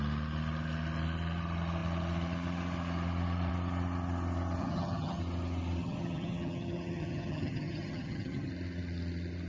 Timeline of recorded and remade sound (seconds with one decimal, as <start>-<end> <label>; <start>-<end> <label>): 0.0-4.6 recorded; 4.6-5.2 remade; 5.2-5.8 recorded; 5.8-8.5 remade; 8.5-9.5 recorded